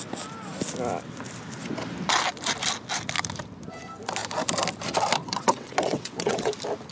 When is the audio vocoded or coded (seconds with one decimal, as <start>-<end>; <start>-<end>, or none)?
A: 5.2-6.5